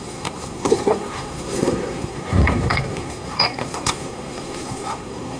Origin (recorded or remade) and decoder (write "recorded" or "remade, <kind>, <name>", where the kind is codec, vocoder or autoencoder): remade, codec, SNAC